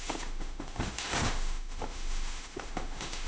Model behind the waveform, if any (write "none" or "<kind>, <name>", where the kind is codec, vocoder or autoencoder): autoencoder, DAC-VAE